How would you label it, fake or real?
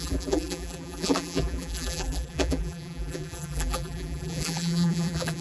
fake